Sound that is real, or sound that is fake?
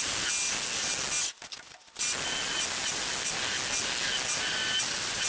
real